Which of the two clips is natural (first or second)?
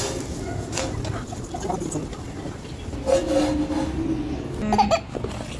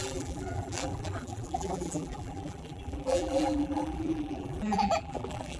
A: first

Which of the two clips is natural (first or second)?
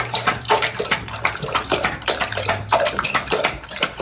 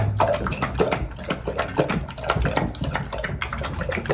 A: second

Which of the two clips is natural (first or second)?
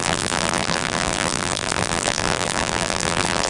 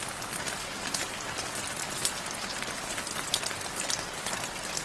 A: second